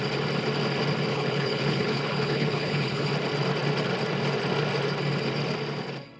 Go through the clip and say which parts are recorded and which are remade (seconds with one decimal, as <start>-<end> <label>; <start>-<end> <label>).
0.0-1.1 recorded; 1.1-3.1 remade; 3.1-6.2 recorded